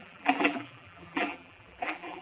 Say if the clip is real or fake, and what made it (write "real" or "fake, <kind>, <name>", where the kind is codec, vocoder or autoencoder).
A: fake, vocoder, BigVGAN v2